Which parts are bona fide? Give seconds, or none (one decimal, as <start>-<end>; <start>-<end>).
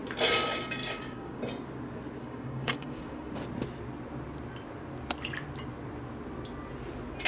0.0-0.8; 1.4-2.2; 3.3-7.3